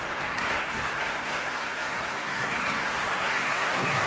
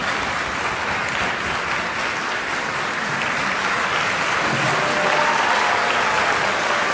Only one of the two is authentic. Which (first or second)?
second